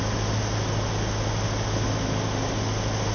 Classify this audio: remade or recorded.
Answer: recorded